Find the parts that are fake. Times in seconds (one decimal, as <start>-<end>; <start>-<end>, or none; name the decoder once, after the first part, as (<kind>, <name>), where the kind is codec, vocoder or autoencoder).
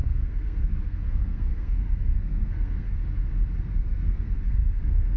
0.0-3.0 (codec, SNAC); 3.6-5.2